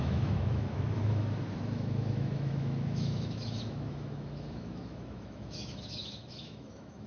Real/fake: fake